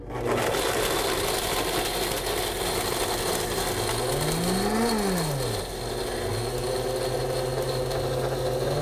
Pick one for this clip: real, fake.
real